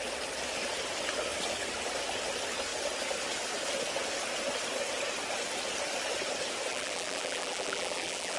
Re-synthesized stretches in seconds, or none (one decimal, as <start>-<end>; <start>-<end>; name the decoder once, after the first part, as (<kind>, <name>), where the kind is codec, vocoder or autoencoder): 6.7-8.4 (vocoder, BigVGAN v2)